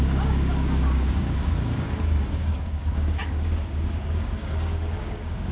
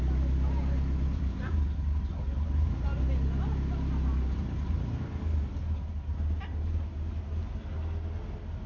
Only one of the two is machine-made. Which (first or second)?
first